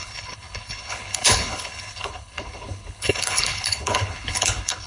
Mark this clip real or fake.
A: fake